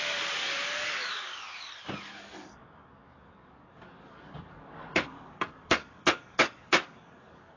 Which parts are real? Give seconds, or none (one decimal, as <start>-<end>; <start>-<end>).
1.3-2.0